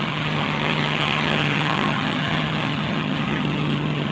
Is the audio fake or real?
fake